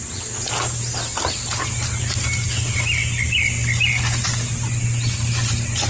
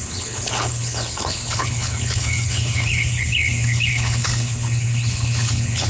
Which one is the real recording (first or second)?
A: first